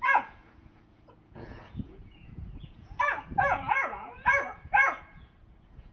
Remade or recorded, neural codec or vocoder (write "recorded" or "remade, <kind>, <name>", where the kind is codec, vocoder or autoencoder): remade, vocoder, Vocos